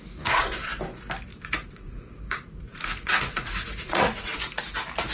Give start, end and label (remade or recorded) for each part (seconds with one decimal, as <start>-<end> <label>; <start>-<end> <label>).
0.0-1.3 recorded; 1.3-4.4 remade; 4.4-5.1 recorded